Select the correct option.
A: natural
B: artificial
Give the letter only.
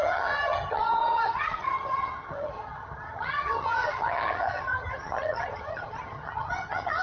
B